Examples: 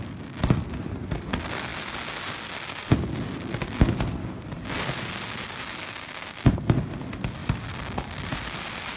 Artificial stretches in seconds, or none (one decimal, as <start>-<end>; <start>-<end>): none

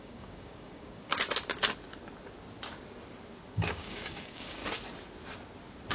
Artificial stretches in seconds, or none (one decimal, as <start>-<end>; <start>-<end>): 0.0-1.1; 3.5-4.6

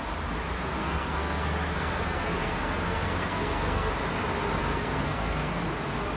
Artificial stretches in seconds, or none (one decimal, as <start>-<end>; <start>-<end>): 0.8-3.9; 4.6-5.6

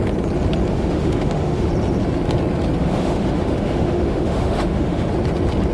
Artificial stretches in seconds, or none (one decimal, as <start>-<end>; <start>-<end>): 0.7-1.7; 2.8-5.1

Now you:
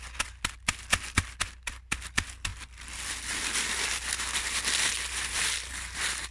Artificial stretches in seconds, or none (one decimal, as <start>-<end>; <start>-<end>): none